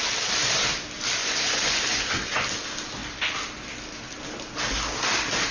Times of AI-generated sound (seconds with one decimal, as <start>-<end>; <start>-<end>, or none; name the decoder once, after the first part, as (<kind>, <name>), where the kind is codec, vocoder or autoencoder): 1.2-2.4 (vocoder, Vocos)